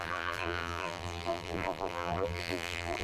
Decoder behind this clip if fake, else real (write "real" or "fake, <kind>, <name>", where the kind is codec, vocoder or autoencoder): fake, vocoder, BigVGAN v2